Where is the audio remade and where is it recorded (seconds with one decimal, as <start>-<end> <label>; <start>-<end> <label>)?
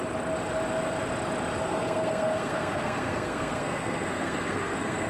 0.0-1.6 recorded; 1.6-5.1 remade